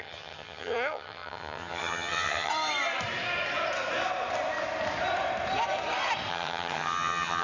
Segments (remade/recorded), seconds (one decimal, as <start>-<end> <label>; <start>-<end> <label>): 0.0-2.5 remade; 2.5-6.3 recorded; 6.3-7.4 remade